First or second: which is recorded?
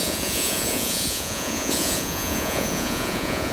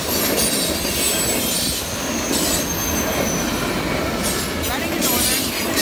second